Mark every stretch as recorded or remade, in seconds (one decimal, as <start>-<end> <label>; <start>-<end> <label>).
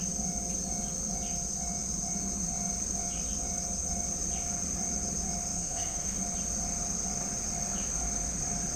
0.0-5.5 recorded; 5.5-6.2 remade; 6.2-8.8 recorded